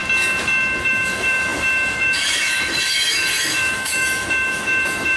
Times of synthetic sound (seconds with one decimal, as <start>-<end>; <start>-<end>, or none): 0.8-5.2